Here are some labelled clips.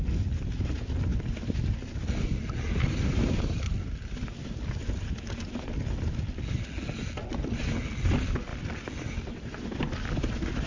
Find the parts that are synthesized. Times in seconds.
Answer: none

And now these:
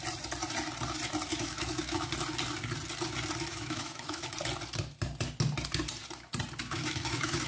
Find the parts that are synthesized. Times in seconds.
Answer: 1.3-2.1 (autoencoder, DAC-VAE); 3.5-4.3; 6.6-7.5

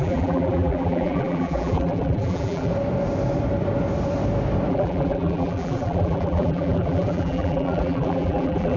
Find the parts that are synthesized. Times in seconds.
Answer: 0.0-2.7 (vocoder, BigVGAN v2); 4.7-8.8